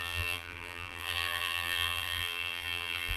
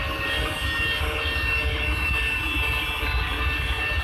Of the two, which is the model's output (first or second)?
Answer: first